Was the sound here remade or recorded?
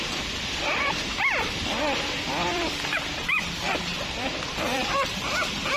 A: remade